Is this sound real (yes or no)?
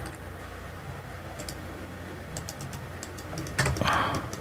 yes